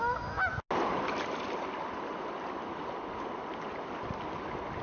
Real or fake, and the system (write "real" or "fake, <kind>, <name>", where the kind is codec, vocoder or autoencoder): real